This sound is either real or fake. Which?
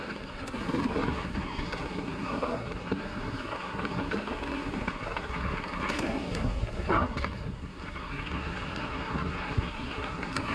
fake